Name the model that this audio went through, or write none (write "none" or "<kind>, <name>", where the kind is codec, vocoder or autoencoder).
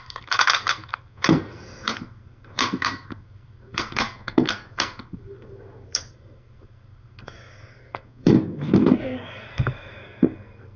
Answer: codec, SNAC